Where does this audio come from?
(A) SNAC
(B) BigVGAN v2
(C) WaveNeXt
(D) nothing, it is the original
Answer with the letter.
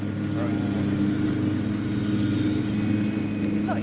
D